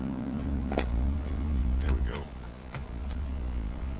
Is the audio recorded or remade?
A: remade